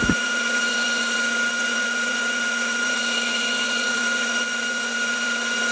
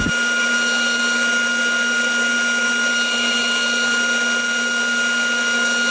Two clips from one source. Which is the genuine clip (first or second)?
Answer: second